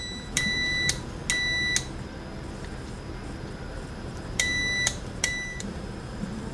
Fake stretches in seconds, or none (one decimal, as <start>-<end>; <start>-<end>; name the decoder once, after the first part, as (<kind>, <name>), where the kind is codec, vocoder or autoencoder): 0.0-1.2 (vocoder, BigVGAN v2); 3.7-6.5

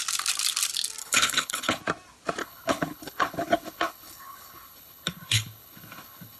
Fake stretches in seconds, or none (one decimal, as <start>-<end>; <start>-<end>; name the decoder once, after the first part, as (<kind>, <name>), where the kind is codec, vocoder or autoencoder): 1.0-1.8 (codec, HILCodec); 2.4-6.4

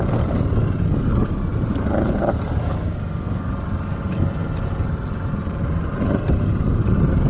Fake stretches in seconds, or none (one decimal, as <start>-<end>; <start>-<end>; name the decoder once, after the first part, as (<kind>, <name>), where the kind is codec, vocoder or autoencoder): none

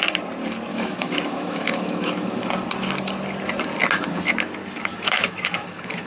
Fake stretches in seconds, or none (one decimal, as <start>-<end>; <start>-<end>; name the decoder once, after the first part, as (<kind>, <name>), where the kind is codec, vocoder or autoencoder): 0.7-2.5 (autoencoder, DAC-VAE); 4.9-6.1

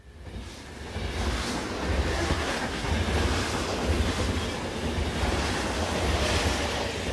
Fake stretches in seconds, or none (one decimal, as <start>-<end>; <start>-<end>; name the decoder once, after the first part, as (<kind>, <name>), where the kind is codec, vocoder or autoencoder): 2.1-2.9 (codec, SNAC)

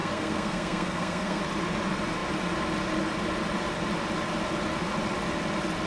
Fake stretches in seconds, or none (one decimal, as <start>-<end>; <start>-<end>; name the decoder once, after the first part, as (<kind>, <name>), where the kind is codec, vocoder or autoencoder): 0.0-1.4 (codec, SNAC)